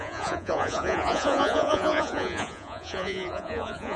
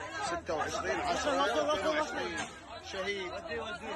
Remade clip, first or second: first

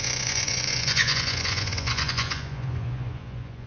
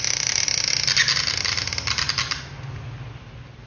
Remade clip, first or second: first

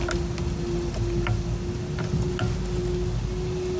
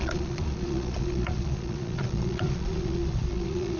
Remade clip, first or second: second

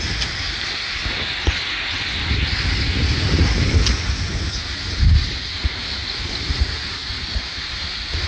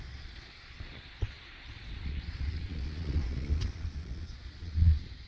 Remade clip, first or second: second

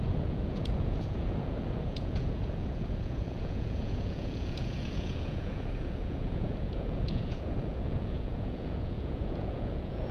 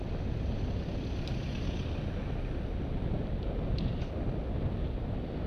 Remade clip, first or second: first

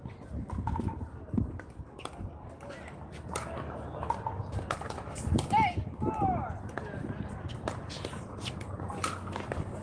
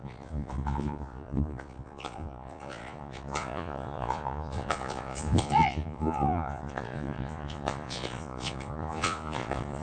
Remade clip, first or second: second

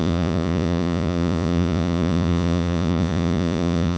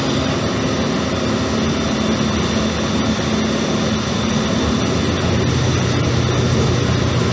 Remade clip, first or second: first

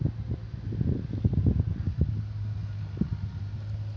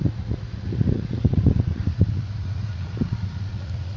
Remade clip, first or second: second